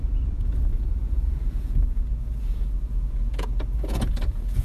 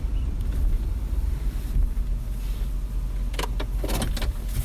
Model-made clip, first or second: first